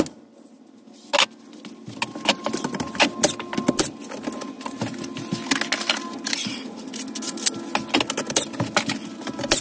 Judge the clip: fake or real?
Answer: real